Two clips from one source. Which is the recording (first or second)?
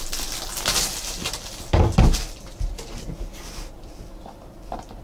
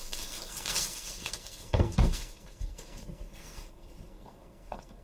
first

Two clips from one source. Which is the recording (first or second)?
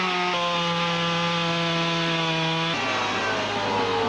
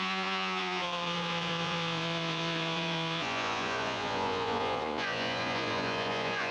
first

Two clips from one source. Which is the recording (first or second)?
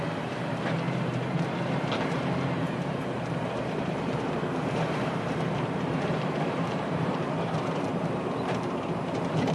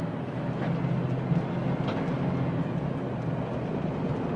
second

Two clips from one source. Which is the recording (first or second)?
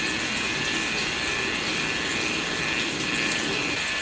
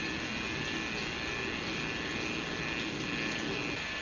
second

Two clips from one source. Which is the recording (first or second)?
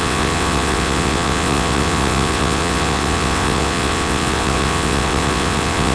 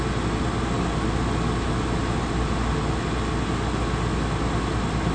second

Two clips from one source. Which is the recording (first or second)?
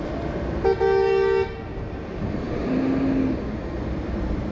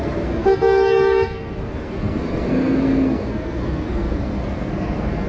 first